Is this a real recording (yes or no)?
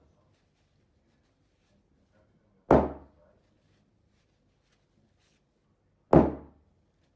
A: yes